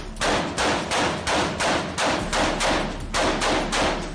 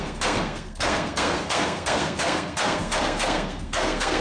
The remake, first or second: second